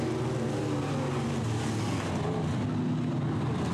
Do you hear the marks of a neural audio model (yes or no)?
no